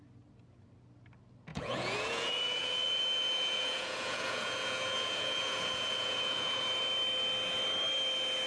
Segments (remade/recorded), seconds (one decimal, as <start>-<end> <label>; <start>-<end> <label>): 0.0-1.5 recorded; 1.5-6.6 remade; 6.6-8.5 recorded

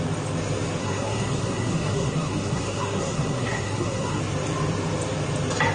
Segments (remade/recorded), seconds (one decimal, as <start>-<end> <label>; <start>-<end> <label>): 0.0-0.8 recorded; 0.8-4.2 remade; 4.2-5.7 recorded

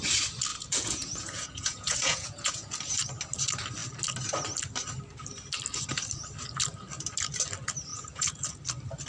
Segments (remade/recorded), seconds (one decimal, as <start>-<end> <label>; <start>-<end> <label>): 0.0-0.5 recorded; 0.5-2.7 remade; 2.7-7.9 recorded; 7.9-8.6 remade; 8.6-9.1 recorded